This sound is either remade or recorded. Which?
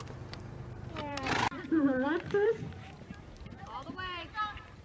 remade